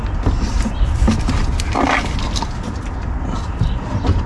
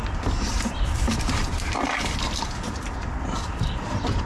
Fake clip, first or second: second